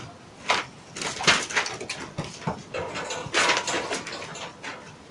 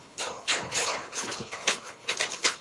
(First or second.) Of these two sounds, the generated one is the second